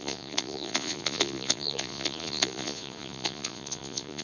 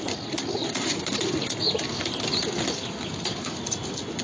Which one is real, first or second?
second